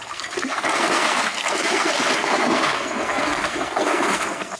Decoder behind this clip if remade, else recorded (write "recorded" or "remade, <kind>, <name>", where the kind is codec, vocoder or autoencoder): remade, codec, SNAC